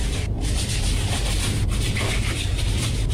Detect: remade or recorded remade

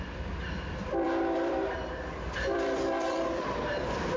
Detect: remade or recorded remade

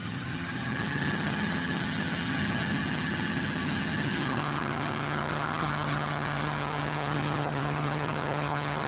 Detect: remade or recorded remade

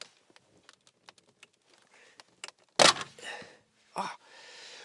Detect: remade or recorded recorded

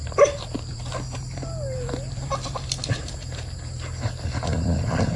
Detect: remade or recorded remade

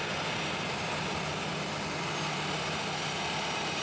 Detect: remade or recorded remade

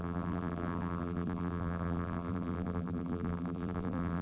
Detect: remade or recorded remade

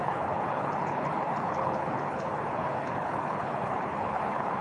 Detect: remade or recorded remade